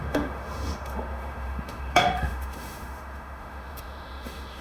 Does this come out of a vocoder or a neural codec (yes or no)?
yes